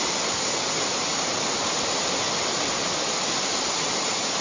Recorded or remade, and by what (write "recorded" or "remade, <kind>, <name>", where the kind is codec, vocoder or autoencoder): recorded